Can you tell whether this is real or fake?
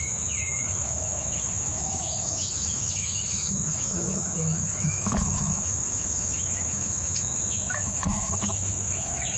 fake